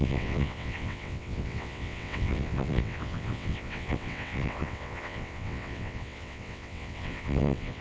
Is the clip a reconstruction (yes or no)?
yes